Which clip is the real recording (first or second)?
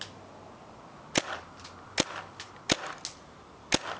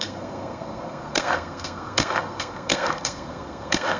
first